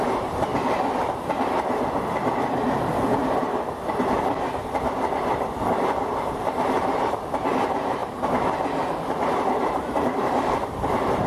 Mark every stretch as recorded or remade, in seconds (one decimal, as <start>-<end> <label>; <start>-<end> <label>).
0.0-0.5 remade; 0.5-5.6 recorded; 5.6-8.0 remade; 8.0-9.5 recorded; 9.5-11.3 remade